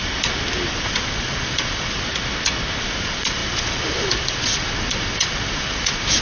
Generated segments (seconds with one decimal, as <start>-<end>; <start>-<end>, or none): 0.7-2.1; 2.8-6.2